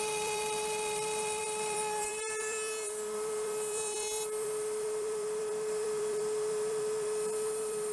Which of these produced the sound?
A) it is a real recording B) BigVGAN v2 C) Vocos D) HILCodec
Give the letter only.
B